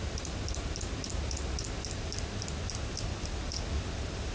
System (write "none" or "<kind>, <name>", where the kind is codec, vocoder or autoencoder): none